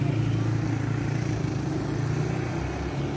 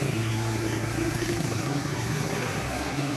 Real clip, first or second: first